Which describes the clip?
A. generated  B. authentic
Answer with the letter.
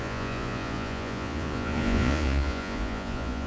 A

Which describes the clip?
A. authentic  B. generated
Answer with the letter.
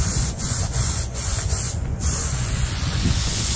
B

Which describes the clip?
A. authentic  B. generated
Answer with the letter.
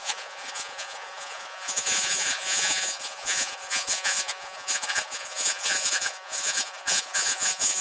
B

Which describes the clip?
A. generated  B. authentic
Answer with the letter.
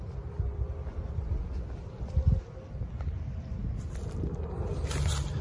B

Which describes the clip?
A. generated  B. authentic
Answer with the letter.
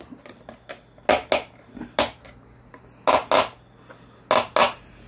B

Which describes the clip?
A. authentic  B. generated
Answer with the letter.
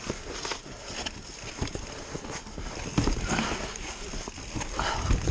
A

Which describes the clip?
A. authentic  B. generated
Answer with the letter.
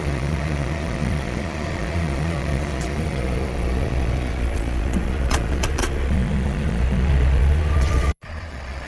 B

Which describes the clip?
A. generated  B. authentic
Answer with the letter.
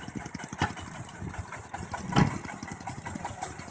B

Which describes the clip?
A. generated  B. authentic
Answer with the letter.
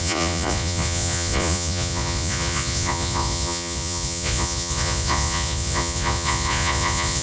A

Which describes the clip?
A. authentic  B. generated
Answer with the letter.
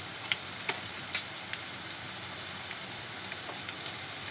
A